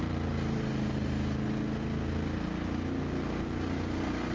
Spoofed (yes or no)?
no